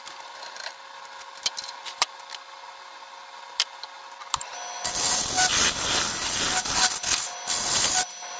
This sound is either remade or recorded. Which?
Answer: recorded